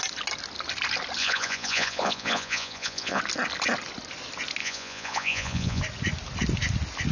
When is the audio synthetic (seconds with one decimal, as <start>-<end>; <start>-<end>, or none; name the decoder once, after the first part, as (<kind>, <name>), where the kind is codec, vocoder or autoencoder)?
1.2-3.2 (vocoder, Vocos); 4.6-5.8